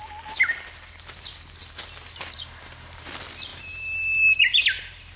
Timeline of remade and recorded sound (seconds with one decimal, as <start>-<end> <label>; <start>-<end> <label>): 0.0-1.6 recorded; 1.6-2.2 remade; 2.2-3.5 recorded; 3.5-4.6 remade; 4.6-5.2 recorded